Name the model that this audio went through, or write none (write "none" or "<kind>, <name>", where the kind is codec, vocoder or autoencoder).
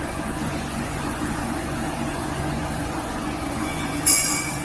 vocoder, Vocos